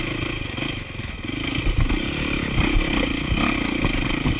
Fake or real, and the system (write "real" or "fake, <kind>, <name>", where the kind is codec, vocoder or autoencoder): real